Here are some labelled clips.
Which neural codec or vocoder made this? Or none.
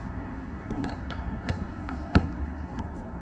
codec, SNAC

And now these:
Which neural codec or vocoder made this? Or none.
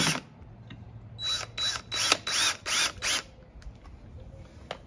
none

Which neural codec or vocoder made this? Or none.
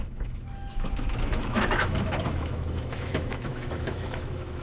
autoencoder, DAC-VAE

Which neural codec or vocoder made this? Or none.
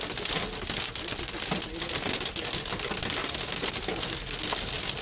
none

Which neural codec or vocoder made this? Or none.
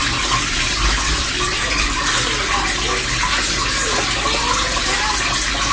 none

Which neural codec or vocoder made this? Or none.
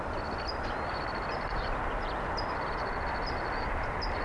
vocoder, BigVGAN v2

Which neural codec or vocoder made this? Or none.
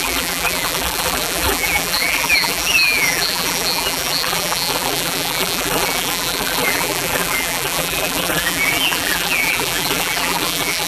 vocoder, BigVGAN v2